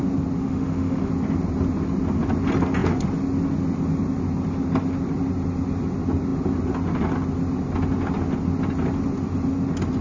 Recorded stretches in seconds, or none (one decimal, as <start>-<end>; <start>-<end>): 0.0-0.4; 1.1-10.0

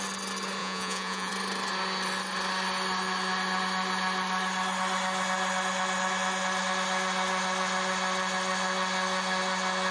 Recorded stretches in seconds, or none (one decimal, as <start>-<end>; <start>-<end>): 0.0-0.6; 1.3-9.9

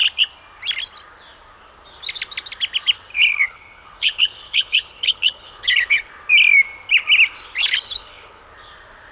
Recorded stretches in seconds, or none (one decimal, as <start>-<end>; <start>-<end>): 0.0-3.1; 6.1-7.6; 8.4-9.1

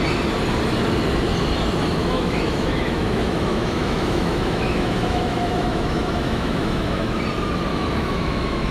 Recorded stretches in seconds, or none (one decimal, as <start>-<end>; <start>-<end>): 0.0-2.0; 7.2-7.7